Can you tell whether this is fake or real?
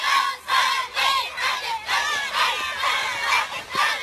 real